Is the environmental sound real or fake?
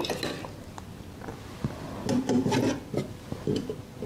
real